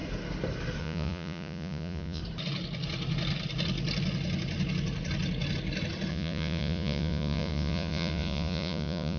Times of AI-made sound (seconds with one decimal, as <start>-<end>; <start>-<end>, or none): 0.8-2.2; 6.1-9.2